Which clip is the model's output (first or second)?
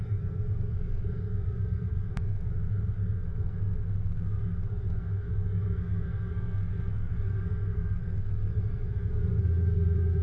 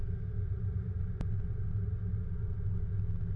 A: first